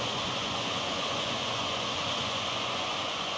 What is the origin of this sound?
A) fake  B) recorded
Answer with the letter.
A